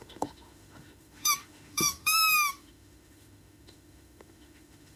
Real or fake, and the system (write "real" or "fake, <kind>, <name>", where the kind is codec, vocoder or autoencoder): fake, autoencoder, DAC-VAE